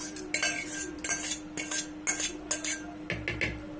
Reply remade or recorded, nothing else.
recorded